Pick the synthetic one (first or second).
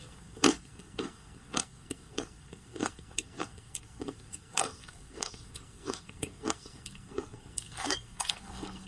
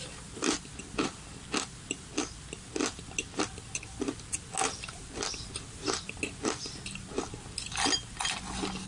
first